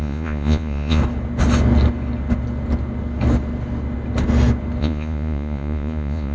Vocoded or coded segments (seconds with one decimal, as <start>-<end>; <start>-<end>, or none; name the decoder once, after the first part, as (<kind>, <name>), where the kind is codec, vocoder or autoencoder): 0.0-1.0 (vocoder, Vocos); 4.8-6.3